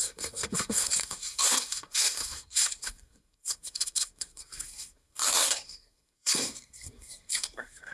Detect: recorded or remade remade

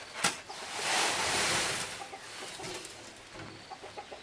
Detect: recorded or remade recorded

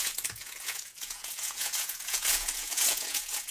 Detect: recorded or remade remade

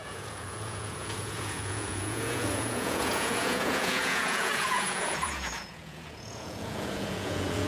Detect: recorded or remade remade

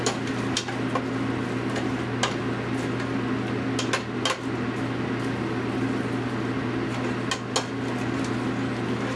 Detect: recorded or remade recorded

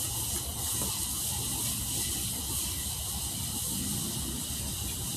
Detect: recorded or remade recorded